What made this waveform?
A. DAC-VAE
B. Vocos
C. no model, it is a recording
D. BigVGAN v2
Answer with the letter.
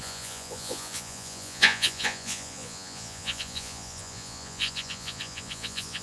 B